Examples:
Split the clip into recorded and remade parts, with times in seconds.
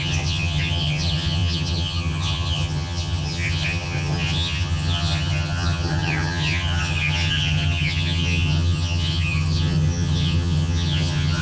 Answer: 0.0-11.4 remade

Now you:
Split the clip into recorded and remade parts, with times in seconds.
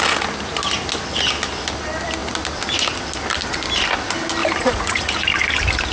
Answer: 0.0-4.4 recorded; 4.4-5.1 remade; 5.1-5.9 recorded